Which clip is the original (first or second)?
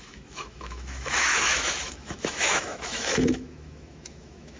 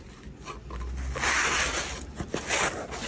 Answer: second